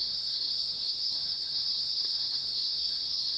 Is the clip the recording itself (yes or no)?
no